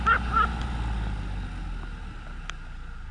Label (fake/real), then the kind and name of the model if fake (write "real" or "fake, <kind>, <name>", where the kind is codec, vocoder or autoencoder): real